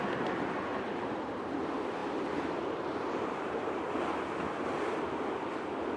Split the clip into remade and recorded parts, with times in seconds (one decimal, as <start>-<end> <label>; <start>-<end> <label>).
0.0-0.7 recorded; 0.7-1.3 remade; 1.3-2.0 recorded; 2.0-3.8 remade; 3.8-6.0 recorded